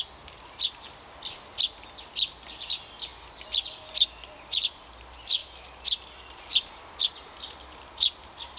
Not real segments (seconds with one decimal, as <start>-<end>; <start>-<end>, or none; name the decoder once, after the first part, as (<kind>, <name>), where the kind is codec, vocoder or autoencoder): none